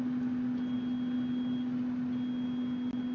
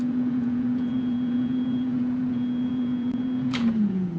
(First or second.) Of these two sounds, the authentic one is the first